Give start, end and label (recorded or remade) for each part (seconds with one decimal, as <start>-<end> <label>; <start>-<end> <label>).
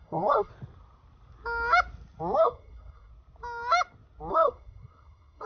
0.0-0.5 remade; 0.5-2.4 recorded; 2.4-3.1 remade; 3.1-4.3 recorded; 4.3-5.5 remade